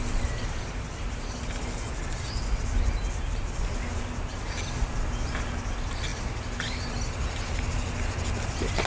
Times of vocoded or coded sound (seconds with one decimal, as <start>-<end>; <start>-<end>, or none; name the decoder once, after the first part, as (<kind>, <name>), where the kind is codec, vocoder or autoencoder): none